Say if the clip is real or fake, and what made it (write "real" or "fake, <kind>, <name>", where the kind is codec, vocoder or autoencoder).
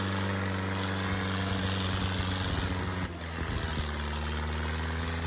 real